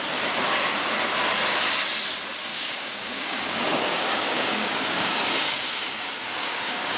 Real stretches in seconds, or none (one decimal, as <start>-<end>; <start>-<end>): 0.0-2.5